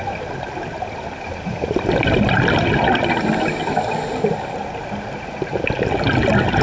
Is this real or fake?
real